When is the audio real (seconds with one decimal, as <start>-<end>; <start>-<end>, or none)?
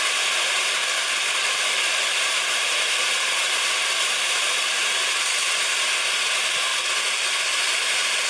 0.8-1.4; 6.7-7.5